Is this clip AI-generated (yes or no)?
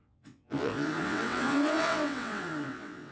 yes